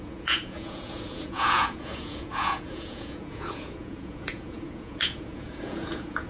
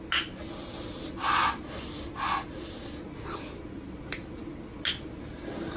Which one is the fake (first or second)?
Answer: first